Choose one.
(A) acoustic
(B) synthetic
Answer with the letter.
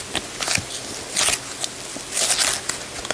A